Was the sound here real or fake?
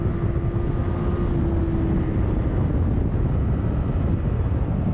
real